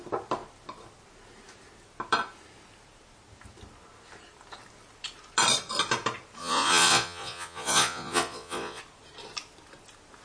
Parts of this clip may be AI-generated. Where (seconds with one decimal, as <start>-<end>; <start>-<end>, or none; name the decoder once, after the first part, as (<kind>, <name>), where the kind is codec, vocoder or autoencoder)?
6.4-8.8 (vocoder, Vocos)